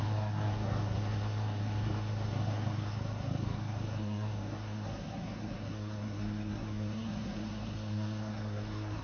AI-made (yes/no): yes